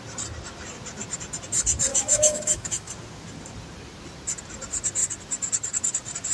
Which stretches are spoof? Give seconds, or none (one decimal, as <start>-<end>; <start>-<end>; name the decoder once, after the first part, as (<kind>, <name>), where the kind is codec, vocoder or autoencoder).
1.9-2.9 (autoencoder, DAC-VAE)